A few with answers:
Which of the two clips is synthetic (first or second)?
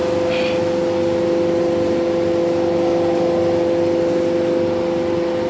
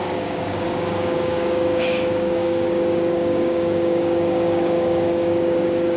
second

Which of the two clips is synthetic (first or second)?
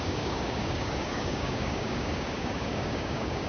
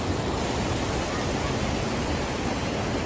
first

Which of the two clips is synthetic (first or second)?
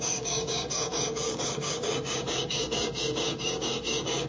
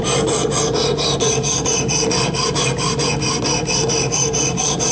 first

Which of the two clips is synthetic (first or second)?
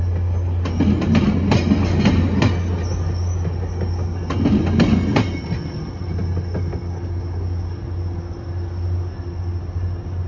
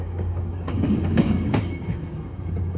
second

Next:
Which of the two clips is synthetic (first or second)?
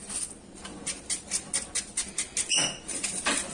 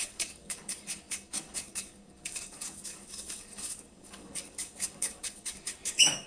second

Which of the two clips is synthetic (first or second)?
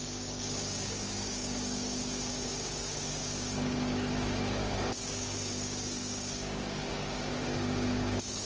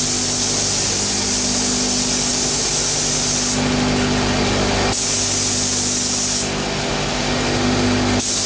first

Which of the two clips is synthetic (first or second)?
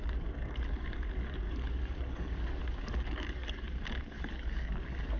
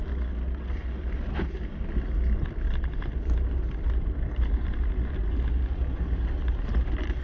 first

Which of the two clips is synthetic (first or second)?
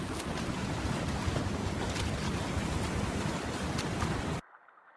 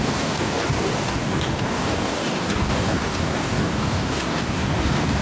second